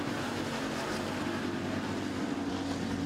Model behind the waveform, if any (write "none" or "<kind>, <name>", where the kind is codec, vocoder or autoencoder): none